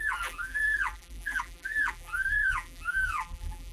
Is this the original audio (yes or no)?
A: no